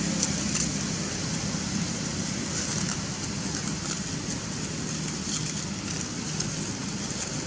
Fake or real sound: real